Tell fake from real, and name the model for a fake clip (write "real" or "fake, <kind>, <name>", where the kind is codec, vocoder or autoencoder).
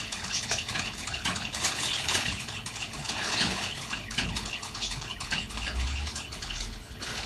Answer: fake, codec, HILCodec